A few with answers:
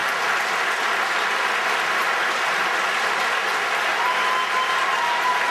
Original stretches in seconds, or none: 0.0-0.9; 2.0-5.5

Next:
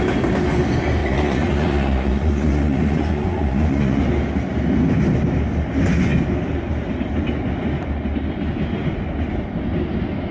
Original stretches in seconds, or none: 0.0-1.0; 4.0-10.3